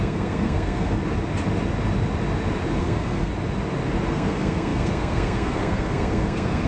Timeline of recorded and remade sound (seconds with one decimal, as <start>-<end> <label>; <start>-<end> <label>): 0.0-1.0 remade; 1.0-2.8 recorded; 2.8-3.3 remade; 3.3-4.1 recorded; 4.1-6.7 remade